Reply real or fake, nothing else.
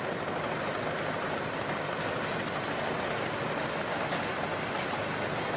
real